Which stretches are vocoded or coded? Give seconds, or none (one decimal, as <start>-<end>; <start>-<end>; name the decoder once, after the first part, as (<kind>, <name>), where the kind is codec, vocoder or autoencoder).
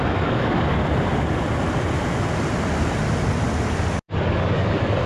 0.0-0.8 (codec, DAC); 3.9-5.1